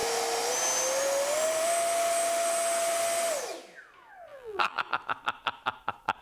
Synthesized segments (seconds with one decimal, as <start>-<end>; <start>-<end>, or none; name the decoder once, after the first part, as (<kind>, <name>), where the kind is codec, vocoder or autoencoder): 4.3-4.8 (vocoder, BigVGAN v2)